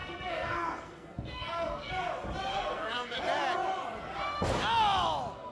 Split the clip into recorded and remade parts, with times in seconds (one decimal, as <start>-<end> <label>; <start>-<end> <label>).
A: 0.0-1.9 remade; 1.9-2.5 recorded; 2.5-3.2 remade; 3.2-5.5 recorded